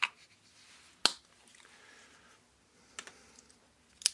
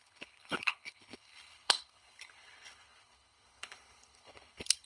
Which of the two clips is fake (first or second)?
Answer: second